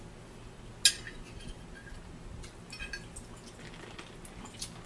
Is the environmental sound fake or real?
real